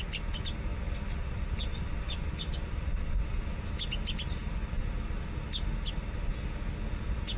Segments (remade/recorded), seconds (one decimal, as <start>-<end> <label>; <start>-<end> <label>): 0.0-7.4 recorded